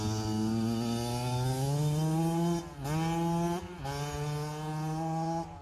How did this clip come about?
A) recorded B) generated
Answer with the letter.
A